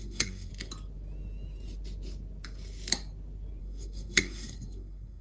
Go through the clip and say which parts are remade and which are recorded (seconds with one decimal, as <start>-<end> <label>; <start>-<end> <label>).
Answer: 0.0-0.5 remade; 0.5-3.6 recorded; 3.6-5.2 remade